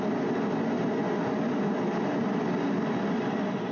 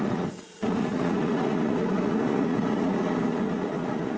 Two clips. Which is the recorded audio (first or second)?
first